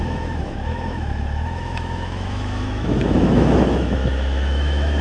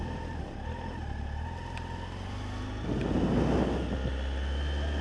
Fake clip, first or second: first